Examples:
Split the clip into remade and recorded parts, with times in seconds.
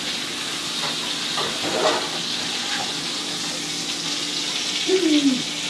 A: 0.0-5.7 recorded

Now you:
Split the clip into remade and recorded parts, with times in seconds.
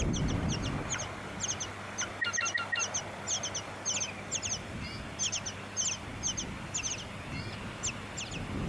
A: 0.0-8.7 recorded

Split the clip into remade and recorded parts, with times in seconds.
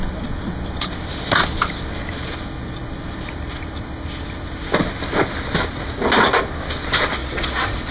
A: 0.0-7.2 recorded; 7.2-7.9 remade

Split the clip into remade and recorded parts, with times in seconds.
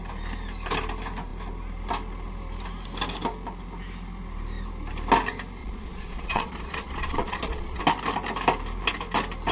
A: 0.0-5.6 recorded; 5.6-7.8 remade; 7.8-9.5 recorded